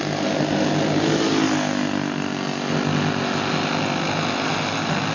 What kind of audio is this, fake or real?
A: real